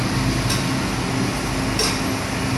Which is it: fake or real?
real